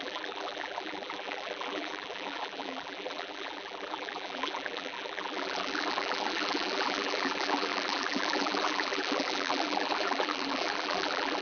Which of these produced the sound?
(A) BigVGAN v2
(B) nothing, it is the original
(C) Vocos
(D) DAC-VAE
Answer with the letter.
A